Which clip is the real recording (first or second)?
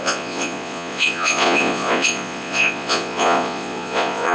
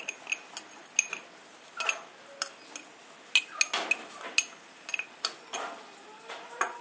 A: second